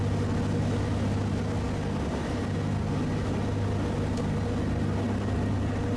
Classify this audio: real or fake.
real